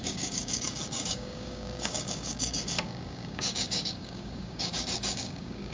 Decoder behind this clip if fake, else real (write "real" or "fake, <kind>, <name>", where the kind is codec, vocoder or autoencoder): fake, codec, DAC